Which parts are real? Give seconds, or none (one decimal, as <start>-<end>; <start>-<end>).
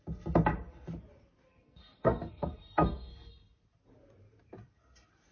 0.0-1.5; 3.3-5.3